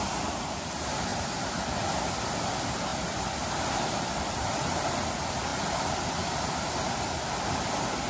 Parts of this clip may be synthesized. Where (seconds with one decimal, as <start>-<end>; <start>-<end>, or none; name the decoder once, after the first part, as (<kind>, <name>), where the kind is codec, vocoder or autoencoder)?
1.1-1.7 (vocoder, BigVGAN v2); 2.9-5.1